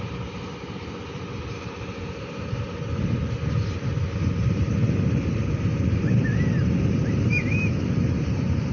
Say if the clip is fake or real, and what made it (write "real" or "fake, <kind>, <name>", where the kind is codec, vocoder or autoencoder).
fake, vocoder, BigVGAN v2